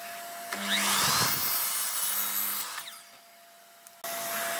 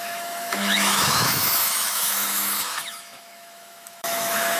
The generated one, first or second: second